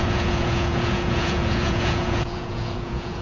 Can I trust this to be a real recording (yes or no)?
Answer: no